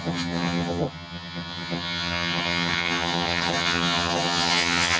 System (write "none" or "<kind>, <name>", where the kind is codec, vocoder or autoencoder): vocoder, HiFi-GAN